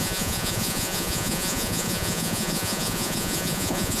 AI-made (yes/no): yes